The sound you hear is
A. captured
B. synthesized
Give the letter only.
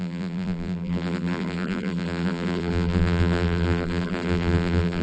B